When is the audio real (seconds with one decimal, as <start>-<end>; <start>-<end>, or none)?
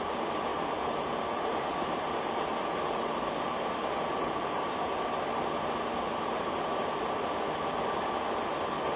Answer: 0.0-0.5; 5.0-6.3; 6.8-9.0